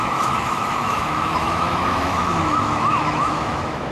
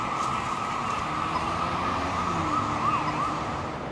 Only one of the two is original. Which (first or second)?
second